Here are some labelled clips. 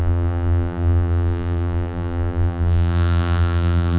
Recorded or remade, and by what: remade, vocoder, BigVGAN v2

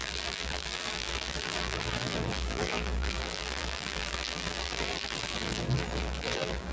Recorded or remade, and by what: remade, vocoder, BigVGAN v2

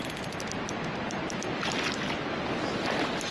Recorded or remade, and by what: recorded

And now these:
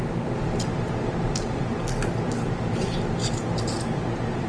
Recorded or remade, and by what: recorded